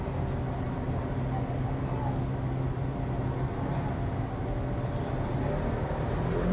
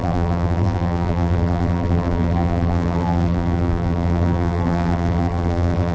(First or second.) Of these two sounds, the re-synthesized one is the second